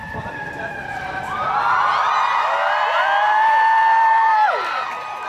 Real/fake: fake